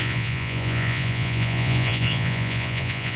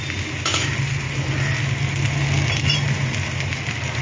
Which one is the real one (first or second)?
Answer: second